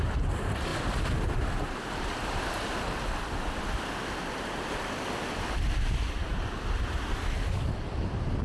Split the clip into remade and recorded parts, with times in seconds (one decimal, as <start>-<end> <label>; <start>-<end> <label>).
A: 0.0-8.4 recorded